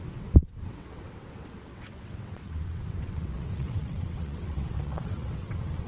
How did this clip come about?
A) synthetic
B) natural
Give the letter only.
A